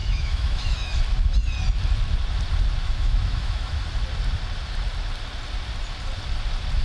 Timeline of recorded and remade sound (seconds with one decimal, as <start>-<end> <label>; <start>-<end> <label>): 0.0-1.0 remade; 1.0-2.8 recorded; 2.8-3.8 remade; 3.8-6.8 recorded